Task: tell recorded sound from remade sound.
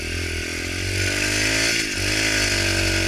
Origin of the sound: recorded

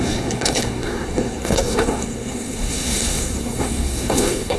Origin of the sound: remade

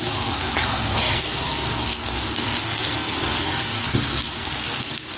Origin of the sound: remade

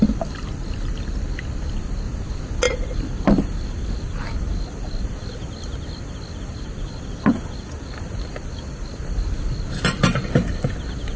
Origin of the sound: recorded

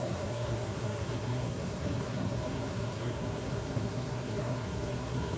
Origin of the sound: remade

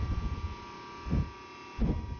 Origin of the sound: recorded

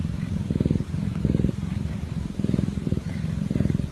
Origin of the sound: recorded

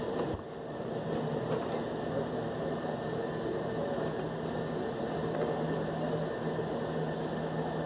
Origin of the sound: recorded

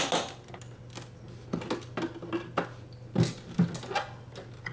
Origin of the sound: recorded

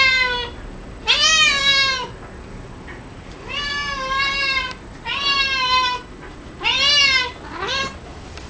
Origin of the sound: recorded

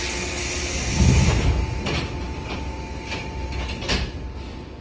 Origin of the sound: recorded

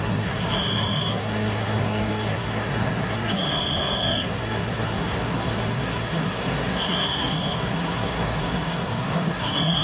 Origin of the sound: remade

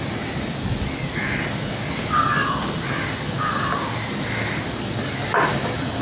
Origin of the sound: recorded